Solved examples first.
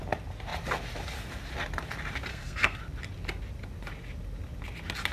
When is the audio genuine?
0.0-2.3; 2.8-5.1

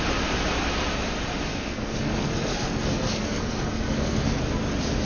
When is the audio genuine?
0.0-1.5; 4.4-5.1

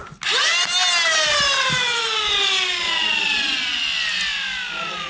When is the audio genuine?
0.0-5.1